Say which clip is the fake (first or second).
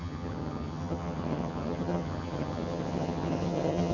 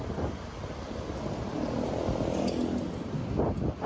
first